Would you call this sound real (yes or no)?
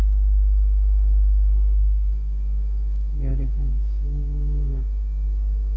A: no